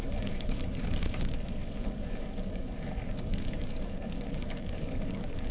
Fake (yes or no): yes